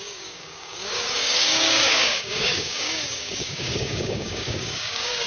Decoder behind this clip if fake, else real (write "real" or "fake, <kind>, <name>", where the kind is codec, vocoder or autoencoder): fake, codec, DAC